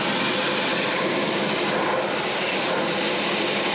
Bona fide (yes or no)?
yes